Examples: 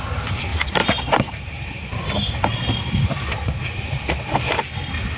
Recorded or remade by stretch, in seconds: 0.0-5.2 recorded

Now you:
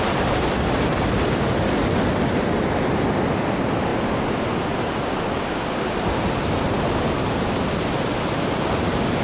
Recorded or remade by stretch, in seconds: 0.0-9.2 recorded

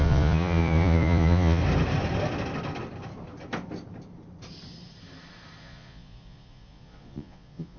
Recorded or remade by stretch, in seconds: 0.0-1.6 remade; 1.6-5.6 recorded; 5.6-7.8 remade